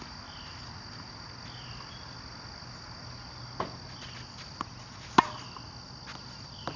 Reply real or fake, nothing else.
real